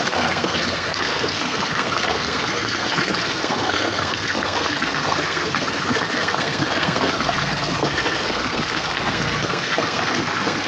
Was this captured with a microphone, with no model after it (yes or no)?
no